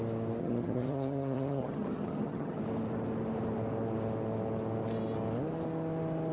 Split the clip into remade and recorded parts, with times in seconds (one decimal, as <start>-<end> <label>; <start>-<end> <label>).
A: 0.0-0.4 recorded; 0.4-2.6 remade; 2.6-6.3 recorded